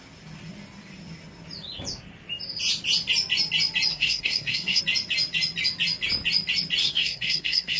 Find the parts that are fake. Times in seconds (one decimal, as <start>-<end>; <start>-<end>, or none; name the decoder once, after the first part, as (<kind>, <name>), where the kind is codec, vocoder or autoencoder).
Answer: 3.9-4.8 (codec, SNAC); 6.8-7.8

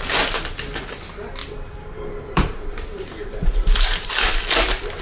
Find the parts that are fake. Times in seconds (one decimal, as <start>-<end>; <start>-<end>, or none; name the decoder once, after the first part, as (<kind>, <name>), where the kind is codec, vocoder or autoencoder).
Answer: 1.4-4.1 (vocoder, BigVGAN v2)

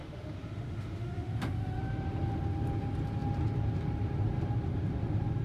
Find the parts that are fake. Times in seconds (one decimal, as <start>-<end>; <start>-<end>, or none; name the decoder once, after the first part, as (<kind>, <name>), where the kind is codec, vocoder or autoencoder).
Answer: 0.0-1.8 (autoencoder, DAC-VAE)

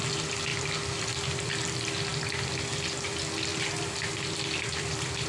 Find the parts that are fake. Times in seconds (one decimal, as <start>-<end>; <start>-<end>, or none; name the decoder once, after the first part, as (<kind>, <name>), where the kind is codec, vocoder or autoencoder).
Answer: 0.5-1.5 (vocoder, BigVGAN v2); 2.1-3.1; 3.5-5.3